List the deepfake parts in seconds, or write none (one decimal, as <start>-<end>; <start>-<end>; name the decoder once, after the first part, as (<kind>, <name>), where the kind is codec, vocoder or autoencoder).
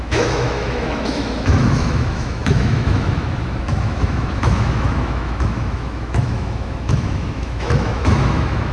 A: 0.0-8.7 (autoencoder, DAC-VAE)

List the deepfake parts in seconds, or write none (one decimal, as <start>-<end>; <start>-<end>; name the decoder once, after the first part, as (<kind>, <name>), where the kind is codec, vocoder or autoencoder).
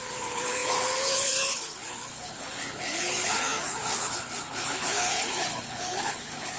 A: 0.0-6.6 (codec, HILCodec)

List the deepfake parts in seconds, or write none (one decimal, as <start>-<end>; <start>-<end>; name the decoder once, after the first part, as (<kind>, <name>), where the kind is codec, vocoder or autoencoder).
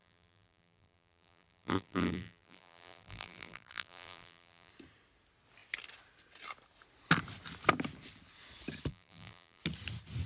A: 0.0-4.7 (vocoder, BigVGAN v2); 8.9-9.6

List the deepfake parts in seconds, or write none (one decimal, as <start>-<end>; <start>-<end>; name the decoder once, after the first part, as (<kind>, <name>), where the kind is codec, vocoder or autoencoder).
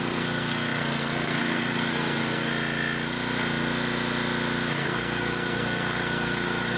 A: 0.0-2.5 (codec, SNAC); 4.7-6.8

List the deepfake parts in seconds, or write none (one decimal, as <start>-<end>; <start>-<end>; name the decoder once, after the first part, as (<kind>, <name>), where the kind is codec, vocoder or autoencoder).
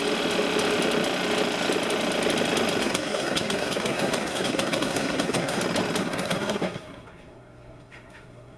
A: 2.8-5.6 (codec, SNAC); 6.0-8.6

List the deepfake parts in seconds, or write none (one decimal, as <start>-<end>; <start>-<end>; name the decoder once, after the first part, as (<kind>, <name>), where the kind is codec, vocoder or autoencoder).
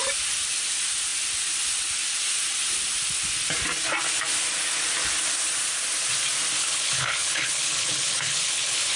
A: 6.6-9.0 (codec, HILCodec)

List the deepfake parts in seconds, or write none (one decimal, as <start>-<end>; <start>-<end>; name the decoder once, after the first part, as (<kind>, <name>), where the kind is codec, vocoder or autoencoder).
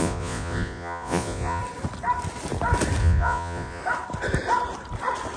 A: 0.0-1.6 (vocoder, Vocos); 3.0-3.8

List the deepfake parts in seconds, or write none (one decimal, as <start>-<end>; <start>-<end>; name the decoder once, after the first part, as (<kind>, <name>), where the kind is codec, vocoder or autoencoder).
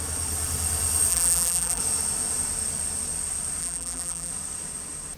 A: 1.1-1.8 (vocoder, BigVGAN v2); 3.6-4.3